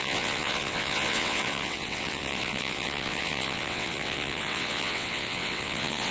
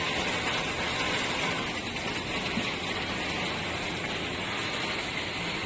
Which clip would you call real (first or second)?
second